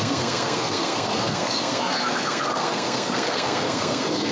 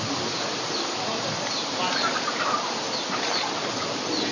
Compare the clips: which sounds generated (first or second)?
first